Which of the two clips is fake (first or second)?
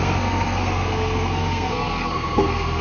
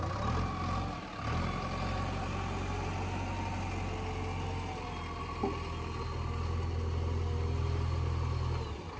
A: first